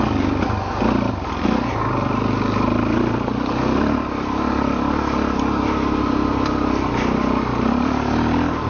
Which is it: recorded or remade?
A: recorded